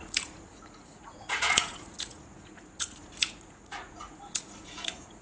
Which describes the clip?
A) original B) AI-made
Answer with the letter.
B